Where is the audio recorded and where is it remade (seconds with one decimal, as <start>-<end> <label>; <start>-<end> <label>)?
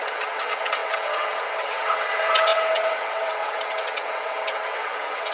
0.0-5.3 remade